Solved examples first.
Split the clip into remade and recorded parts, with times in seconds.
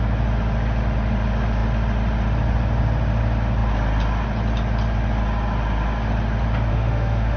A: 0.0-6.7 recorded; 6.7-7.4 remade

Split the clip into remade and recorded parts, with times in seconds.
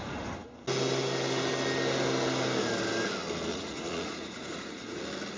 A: 0.0-3.5 recorded; 3.5-5.0 remade; 5.0-5.4 recorded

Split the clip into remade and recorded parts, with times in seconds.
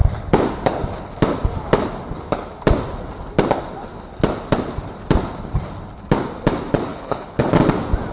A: 0.0-6.9 recorded; 6.9-7.5 remade; 7.5-8.1 recorded